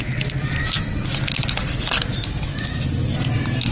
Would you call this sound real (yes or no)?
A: yes